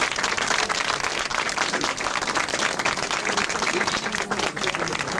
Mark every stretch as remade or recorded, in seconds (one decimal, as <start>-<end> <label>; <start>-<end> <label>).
0.0-5.2 recorded